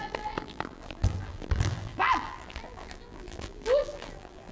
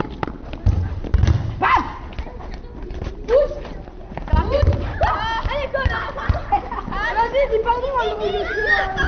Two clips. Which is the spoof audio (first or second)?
first